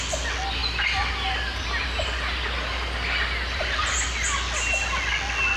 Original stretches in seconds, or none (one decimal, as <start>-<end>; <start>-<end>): 0.0-5.6